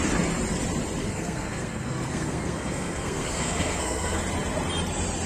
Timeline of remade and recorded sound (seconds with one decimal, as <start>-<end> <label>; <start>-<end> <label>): 0.0-1.0 recorded; 1.0-4.2 remade; 4.2-5.3 recorded

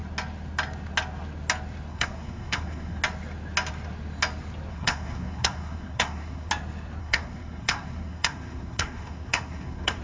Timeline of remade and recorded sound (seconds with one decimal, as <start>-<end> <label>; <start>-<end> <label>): 0.0-1.9 recorded; 1.9-3.0 remade; 3.0-4.7 recorded; 4.7-6.5 remade; 6.5-7.0 recorded; 7.0-10.0 remade

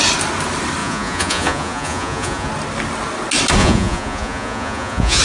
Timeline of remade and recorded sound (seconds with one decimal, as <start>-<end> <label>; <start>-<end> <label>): 0.0-0.8 recorded; 0.8-2.5 remade; 2.5-3.6 recorded; 3.6-5.2 remade

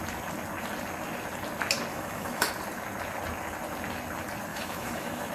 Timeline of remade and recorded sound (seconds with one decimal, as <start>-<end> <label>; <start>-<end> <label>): 0.0-1.9 recorded; 1.9-2.5 remade; 2.5-4.5 recorded; 4.5-5.3 remade

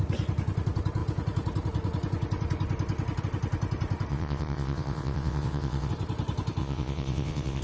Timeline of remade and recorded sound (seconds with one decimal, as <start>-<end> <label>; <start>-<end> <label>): 0.0-4.1 recorded; 4.1-5.9 remade; 5.9-6.6 recorded; 6.6-7.6 remade

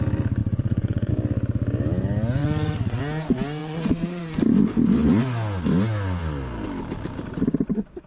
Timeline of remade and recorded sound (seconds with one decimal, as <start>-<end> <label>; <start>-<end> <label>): 0.0-0.4 recorded; 0.4-1.1 remade; 1.1-2.4 recorded; 2.4-3.0 remade; 3.0-3.6 recorded; 3.6-4.2 remade; 4.2-8.1 recorded